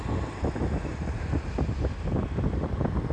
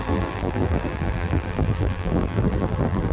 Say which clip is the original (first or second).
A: first